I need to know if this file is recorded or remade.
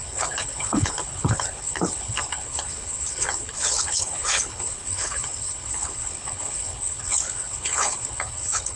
remade